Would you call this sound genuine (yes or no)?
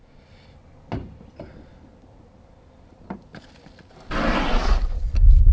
yes